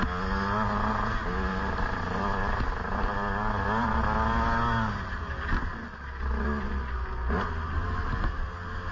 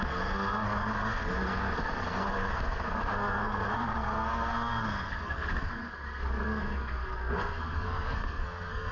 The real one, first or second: first